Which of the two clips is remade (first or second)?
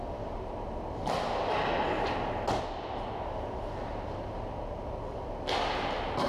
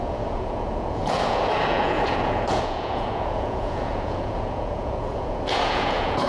second